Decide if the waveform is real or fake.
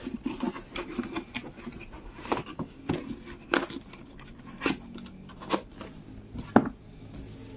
real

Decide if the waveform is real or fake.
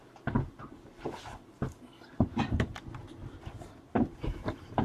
real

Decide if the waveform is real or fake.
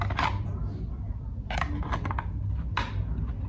real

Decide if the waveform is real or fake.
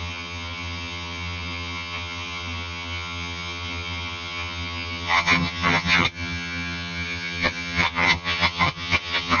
fake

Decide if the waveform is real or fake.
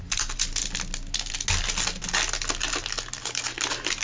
real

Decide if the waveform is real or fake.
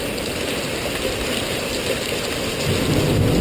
real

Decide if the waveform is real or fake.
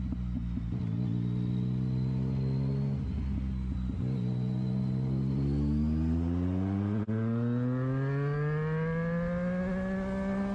real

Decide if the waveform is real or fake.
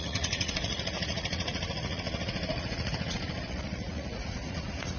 fake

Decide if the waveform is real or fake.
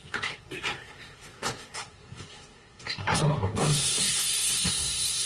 fake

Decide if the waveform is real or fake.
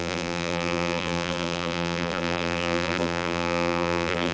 fake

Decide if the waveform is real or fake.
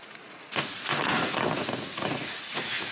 fake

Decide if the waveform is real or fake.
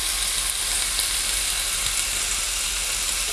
real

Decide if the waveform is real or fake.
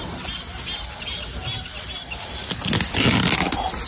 real